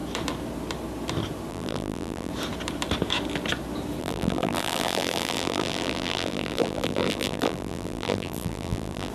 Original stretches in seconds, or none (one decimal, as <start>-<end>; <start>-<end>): 0.0-1.5; 2.3-4.0